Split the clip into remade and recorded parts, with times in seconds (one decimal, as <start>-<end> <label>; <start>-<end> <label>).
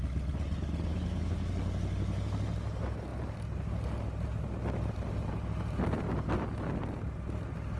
0.0-0.9 recorded; 0.9-1.5 remade; 1.5-7.8 recorded